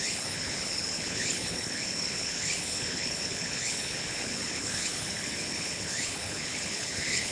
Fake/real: fake